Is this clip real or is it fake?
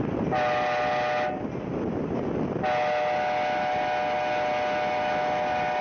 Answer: real